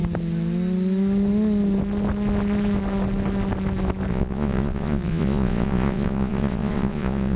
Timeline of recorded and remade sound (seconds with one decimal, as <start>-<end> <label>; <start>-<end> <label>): 0.0-4.1 recorded; 4.1-7.4 remade